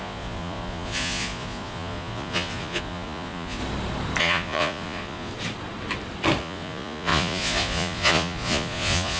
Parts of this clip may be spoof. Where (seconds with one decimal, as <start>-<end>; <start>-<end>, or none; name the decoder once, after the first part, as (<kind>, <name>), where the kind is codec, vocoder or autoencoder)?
0.0-3.6 (vocoder, Vocos); 4.2-5.3; 6.4-9.2